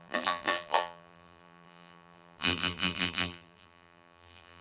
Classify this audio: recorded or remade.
remade